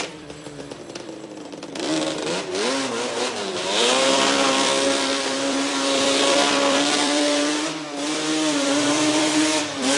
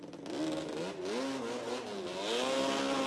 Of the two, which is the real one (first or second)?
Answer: second